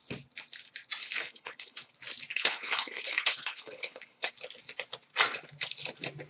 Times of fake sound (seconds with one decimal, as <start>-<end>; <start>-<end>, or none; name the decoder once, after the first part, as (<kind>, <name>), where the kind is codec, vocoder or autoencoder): 1.0-1.9 (codec, HILCodec); 2.3-4.3